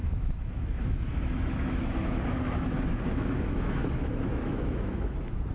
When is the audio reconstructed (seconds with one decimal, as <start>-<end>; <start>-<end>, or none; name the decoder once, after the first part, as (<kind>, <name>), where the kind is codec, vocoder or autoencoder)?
0.0-5.5 (autoencoder, DAC-VAE)